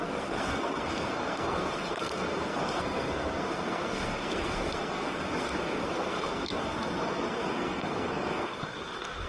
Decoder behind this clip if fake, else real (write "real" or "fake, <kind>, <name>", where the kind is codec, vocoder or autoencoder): fake, codec, SNAC